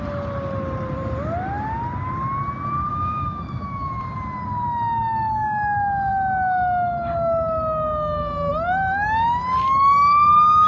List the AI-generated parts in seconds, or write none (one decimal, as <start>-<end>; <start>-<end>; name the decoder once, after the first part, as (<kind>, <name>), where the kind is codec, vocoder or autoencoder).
2.9-3.9 (autoencoder, DAC-VAE)

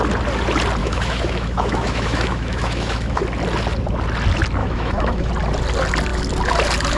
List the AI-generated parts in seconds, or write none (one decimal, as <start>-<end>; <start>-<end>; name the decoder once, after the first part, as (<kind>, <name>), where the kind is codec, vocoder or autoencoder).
0.8-3.2 (autoencoder, DAC-VAE); 4.6-5.3